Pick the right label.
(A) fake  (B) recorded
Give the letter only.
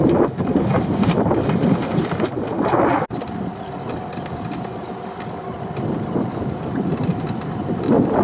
B